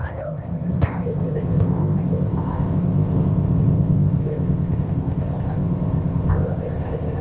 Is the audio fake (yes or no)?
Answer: yes